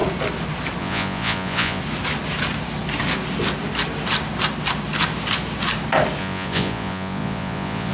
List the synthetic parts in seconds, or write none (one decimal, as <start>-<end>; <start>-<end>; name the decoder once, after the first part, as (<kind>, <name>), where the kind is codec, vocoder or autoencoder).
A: 0.8-1.8 (vocoder, Vocos); 6.2-7.9